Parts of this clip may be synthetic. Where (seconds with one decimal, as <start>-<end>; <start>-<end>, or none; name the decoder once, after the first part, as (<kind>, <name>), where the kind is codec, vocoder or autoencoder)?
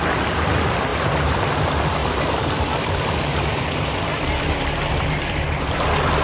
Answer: 0.9-1.4 (vocoder, BigVGAN v2); 2.0-5.7